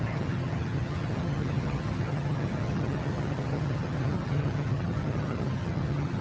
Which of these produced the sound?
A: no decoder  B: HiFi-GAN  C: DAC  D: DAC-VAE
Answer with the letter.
B